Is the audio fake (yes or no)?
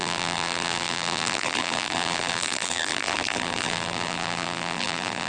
yes